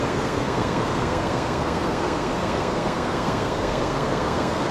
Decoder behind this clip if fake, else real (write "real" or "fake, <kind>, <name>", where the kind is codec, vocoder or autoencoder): fake, codec, SNAC